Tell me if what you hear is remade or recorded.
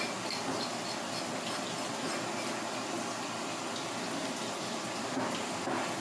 recorded